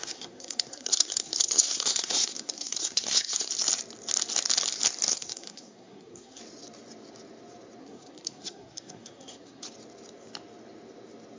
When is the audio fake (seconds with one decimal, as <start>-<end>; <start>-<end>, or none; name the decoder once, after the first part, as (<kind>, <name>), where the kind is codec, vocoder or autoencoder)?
0.0-3.5 (codec, SNAC); 5.1-6.4; 7.8-9.6